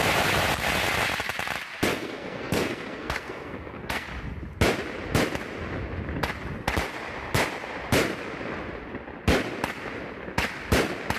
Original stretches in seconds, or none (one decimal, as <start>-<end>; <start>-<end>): 0.0-1.9; 4.1-11.2